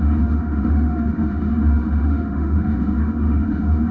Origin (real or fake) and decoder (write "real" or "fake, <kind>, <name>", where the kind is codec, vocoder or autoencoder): fake, autoencoder, DAC-VAE